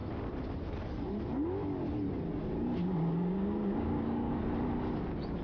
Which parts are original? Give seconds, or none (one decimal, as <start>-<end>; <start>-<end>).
0.0-2.8; 4.3-5.4